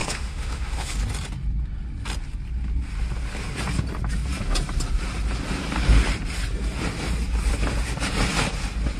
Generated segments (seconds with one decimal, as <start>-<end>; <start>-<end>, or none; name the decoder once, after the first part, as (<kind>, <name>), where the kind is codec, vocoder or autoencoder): 0.0-1.0 (autoencoder, DAC-VAE)